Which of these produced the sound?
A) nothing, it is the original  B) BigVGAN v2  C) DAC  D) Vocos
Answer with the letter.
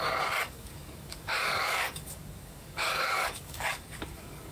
C